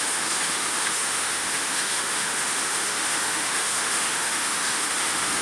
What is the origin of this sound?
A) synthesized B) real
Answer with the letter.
A